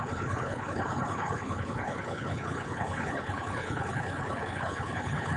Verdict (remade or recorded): remade